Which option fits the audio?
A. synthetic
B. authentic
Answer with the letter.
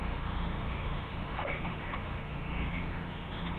A